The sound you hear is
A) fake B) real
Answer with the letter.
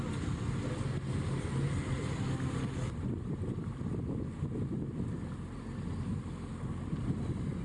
B